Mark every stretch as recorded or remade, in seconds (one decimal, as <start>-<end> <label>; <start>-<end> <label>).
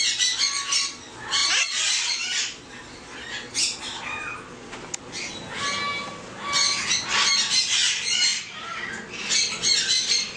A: 0.0-10.4 recorded